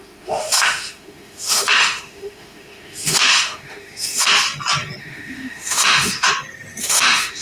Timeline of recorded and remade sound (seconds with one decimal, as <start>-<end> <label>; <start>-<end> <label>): 0.0-4.3 remade; 4.3-5.0 recorded; 5.0-6.3 remade; 6.3-6.8 recorded; 6.8-7.4 remade